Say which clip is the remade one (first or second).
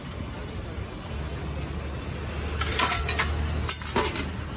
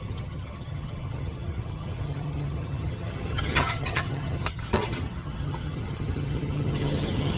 second